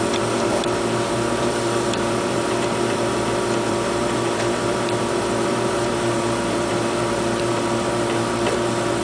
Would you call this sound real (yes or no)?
no